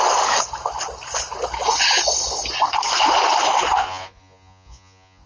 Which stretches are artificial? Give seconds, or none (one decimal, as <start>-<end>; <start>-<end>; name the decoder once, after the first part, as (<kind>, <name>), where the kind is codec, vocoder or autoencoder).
3.8-5.3 (vocoder, Vocos)